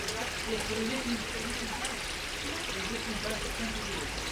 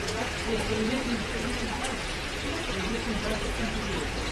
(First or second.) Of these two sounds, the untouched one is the first